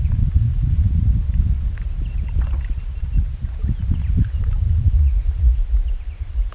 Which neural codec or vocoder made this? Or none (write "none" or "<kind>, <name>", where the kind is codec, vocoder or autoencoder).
none